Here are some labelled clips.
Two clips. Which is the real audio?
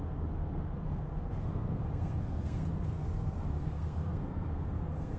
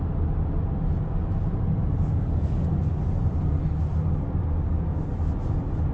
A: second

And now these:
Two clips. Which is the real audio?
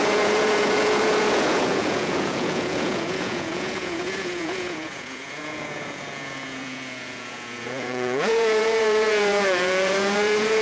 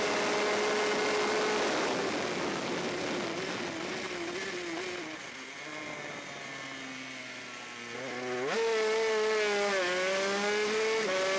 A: second